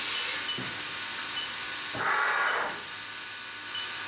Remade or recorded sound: recorded